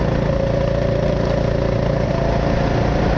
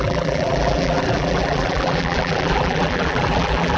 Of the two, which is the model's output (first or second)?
second